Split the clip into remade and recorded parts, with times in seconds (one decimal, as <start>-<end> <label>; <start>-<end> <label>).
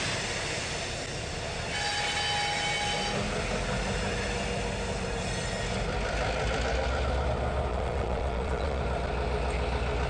0.0-7.7 recorded; 7.7-8.8 remade; 8.8-10.1 recorded